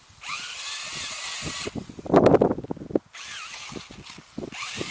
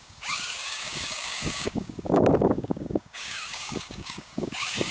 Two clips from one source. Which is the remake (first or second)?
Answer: second